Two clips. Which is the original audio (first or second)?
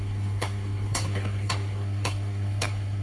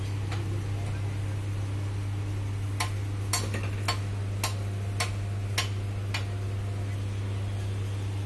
second